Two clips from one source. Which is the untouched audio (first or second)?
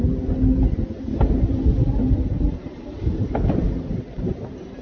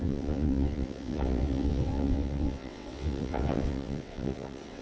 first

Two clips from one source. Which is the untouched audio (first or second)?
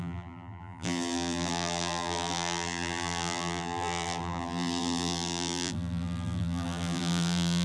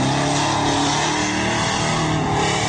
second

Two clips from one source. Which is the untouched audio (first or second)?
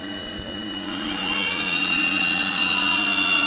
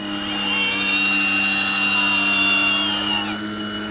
second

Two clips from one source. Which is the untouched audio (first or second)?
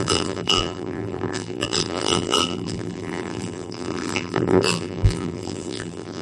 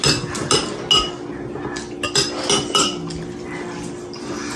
second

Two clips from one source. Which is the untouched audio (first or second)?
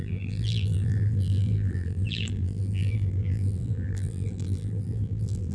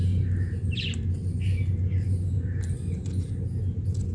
second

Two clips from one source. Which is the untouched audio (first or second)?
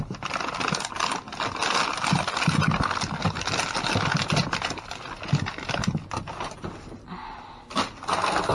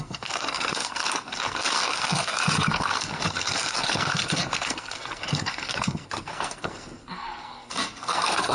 first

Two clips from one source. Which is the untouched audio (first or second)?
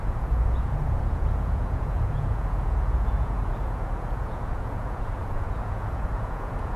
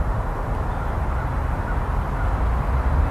second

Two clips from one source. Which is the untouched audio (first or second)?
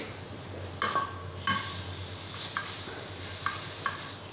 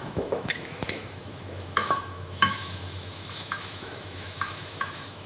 first